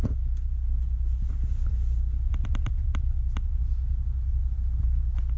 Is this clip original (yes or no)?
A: yes